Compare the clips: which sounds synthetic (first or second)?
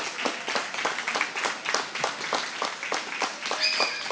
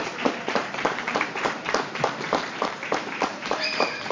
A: second